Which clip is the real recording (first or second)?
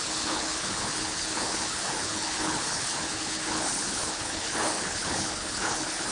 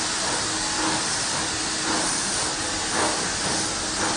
second